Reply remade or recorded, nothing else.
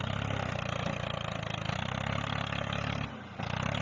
recorded